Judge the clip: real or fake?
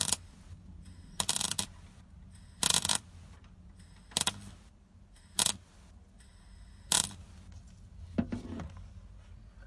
real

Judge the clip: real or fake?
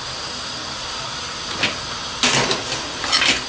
real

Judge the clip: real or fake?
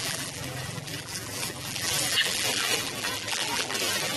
fake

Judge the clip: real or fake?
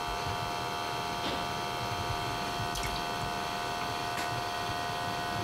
real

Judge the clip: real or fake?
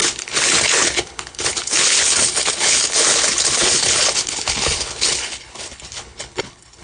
fake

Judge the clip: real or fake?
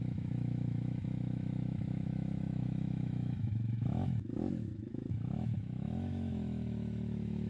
fake